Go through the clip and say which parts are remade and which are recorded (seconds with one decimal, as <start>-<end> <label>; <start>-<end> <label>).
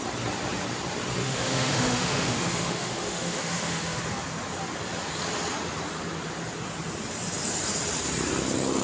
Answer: 0.0-1.2 recorded; 1.2-4.0 remade; 4.0-8.8 recorded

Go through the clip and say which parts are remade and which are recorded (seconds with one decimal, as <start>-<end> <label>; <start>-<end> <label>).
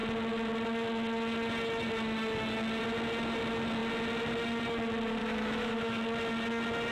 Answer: 0.0-5.2 recorded; 5.2-6.0 remade; 6.0-6.9 recorded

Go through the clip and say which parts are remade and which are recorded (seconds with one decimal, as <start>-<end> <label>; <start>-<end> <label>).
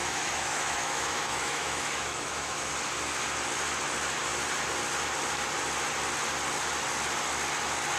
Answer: 0.0-2.7 remade; 2.7-8.0 recorded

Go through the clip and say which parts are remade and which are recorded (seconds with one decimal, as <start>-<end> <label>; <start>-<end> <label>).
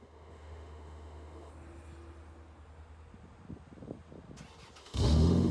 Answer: 0.0-1.5 remade; 1.5-4.8 recorded; 4.8-5.5 remade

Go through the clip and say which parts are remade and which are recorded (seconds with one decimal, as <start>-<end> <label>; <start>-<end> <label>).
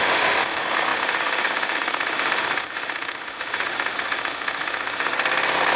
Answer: 0.0-5.1 remade; 5.1-5.8 recorded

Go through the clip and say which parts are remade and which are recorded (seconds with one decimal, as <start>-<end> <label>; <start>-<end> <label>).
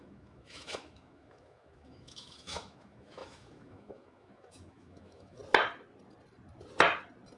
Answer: 0.0-5.4 remade; 5.4-7.4 recorded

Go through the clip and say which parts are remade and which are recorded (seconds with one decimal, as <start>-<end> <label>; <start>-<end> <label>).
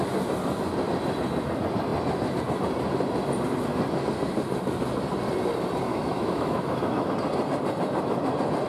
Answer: 0.0-5.9 recorded; 5.9-7.1 remade; 7.1-8.7 recorded